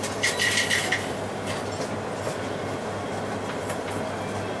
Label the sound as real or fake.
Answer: real